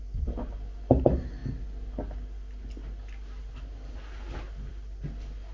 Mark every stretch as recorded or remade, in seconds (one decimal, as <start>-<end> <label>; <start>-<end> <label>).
0.0-5.5 recorded